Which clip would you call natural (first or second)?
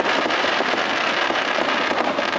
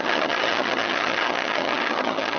first